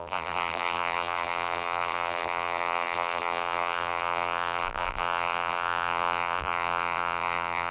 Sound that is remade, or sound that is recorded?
remade